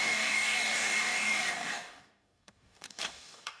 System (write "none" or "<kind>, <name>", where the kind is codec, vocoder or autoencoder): codec, DAC